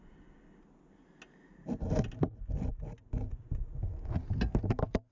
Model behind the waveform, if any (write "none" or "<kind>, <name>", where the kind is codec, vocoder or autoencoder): none